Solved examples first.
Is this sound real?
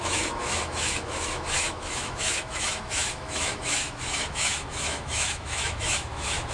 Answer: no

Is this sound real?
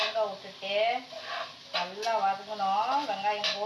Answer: yes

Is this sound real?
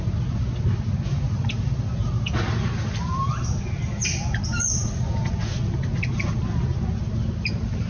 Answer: yes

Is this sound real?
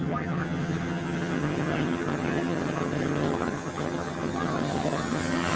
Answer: no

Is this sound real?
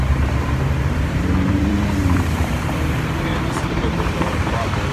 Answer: no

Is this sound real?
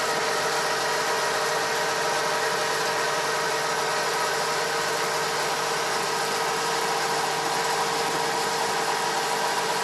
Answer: yes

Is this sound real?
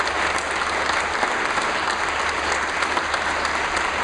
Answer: yes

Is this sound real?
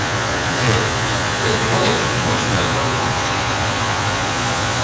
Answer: no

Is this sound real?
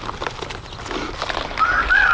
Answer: yes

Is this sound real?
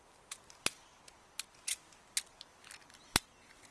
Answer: yes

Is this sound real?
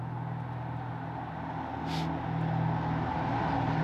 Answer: yes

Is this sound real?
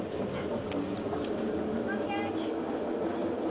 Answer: yes